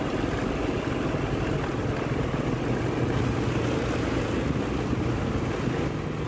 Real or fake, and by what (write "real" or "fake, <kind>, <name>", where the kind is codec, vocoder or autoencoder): real